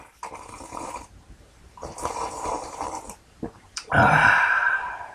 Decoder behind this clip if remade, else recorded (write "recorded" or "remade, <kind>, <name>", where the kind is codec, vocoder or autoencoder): remade, vocoder, BigVGAN v2